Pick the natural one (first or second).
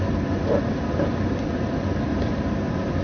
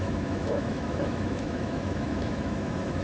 first